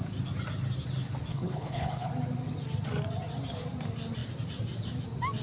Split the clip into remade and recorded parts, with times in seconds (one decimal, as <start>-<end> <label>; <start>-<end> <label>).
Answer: 0.0-1.3 recorded; 1.3-2.1 remade; 2.1-5.4 recorded